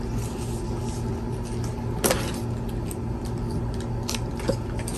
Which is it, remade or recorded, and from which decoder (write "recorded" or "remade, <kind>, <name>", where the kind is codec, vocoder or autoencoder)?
recorded